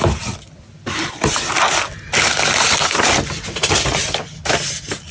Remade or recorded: recorded